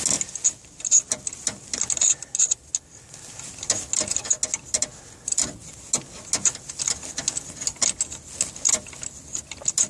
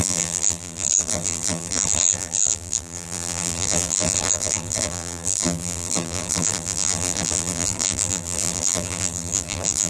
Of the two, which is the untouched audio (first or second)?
first